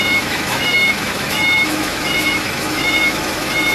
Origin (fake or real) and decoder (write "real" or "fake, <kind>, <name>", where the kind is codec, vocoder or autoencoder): fake, autoencoder, DAC-VAE